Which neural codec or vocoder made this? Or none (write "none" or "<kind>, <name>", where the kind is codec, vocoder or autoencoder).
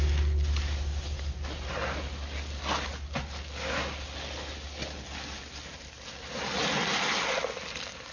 none